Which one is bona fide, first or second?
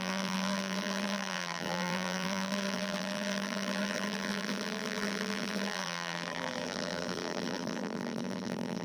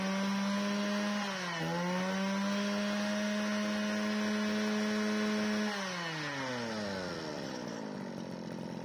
second